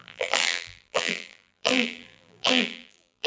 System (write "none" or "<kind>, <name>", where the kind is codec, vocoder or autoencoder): vocoder, BigVGAN v2